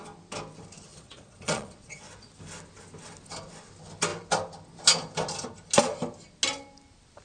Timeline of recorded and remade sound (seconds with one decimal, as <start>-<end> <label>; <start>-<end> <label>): 0.0-0.9 recorded; 0.9-2.0 remade; 2.0-7.2 recorded